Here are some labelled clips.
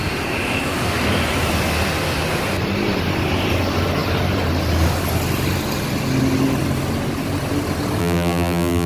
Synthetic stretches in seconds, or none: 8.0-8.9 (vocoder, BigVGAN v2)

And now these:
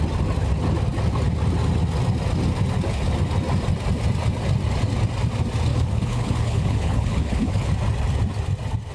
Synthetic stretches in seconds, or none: 5.7-7.7 (codec, HILCodec)

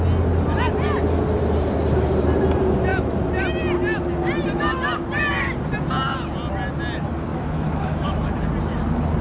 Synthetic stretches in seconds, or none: 7.3-8.5 (autoencoder, DAC-VAE)

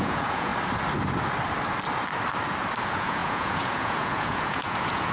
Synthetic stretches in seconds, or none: 0.0-0.5 (vocoder, Vocos); 2.8-5.1